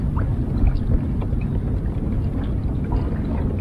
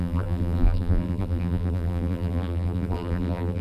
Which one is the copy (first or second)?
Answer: second